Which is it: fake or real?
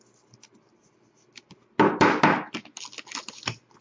real